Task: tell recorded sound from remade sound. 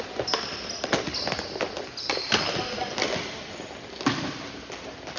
recorded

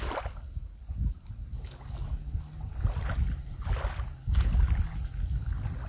recorded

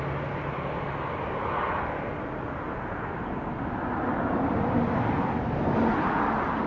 recorded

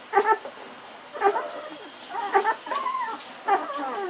recorded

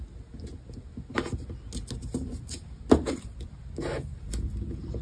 recorded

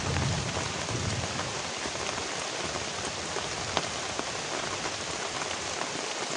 recorded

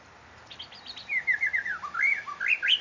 remade